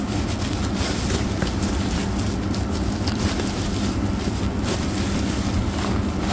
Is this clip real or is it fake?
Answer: real